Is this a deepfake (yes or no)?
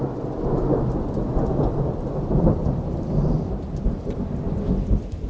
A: no